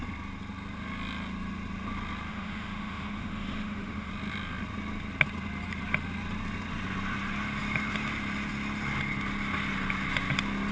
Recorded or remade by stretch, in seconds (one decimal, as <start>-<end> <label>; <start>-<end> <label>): 0.0-2.3 recorded; 2.3-4.1 remade; 4.1-10.7 recorded